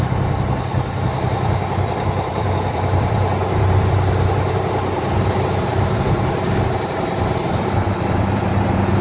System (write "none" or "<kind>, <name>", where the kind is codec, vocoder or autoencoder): vocoder, BigVGAN v2